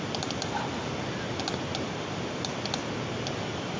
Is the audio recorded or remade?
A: recorded